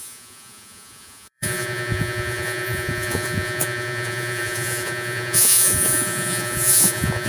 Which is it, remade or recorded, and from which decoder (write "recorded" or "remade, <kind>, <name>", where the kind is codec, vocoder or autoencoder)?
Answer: remade, vocoder, Vocos